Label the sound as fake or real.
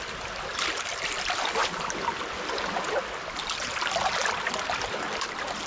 real